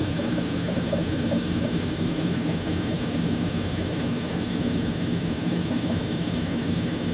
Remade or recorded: remade